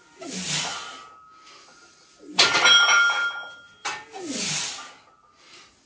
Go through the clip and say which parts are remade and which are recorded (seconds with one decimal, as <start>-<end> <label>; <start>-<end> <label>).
0.0-5.9 recorded